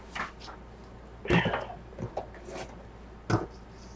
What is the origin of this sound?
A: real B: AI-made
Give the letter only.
A